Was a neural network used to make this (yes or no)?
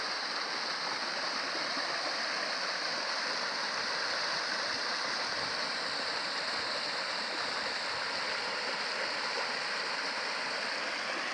no